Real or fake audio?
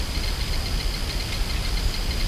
real